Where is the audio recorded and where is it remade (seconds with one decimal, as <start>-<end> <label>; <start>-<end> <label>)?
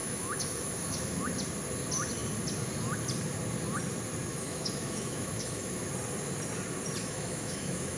0.0-1.2 remade; 1.2-4.3 recorded; 4.3-5.9 remade; 5.9-7.0 recorded; 7.0-8.0 remade